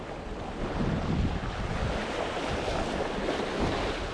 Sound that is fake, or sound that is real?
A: real